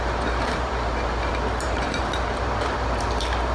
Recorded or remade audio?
remade